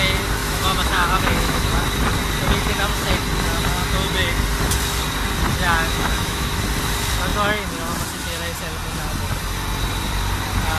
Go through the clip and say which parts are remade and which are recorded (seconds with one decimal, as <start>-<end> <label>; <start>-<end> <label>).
0.0-0.4 recorded; 0.4-1.7 remade; 1.7-5.9 recorded; 5.9-6.6 remade; 6.6-10.8 recorded